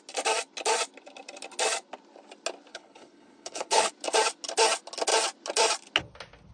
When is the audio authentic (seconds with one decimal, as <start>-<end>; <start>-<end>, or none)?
0.0-2.7; 3.9-6.5